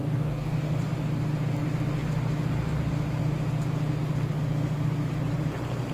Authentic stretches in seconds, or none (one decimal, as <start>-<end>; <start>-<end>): 0.6-5.9